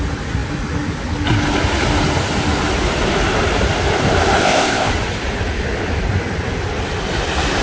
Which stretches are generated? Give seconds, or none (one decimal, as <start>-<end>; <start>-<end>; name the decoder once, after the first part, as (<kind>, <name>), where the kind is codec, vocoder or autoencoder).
4.4-4.9 (codec, ZipCodec)